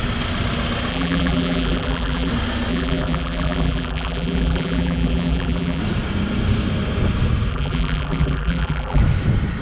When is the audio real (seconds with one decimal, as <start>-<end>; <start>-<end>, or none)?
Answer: 0.0-0.9; 2.3-2.7; 5.8-7.5; 9.0-9.6